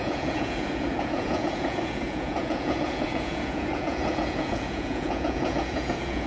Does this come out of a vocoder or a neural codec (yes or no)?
yes